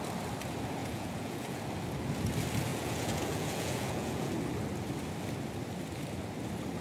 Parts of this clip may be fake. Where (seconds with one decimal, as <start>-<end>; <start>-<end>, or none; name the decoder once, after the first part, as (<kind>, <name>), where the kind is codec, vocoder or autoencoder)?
0.8-1.6 (vocoder, Vocos); 2.7-4.3